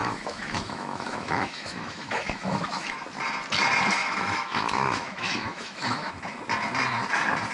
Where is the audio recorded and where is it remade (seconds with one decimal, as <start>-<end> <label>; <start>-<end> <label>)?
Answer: 0.0-3.0 remade; 3.0-4.0 recorded; 4.0-6.1 remade; 6.1-7.5 recorded